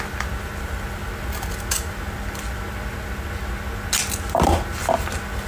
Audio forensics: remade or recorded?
recorded